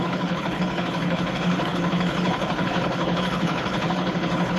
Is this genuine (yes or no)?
no